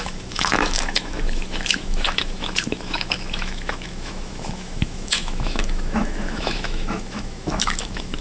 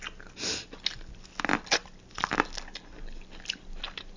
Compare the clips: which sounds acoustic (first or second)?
second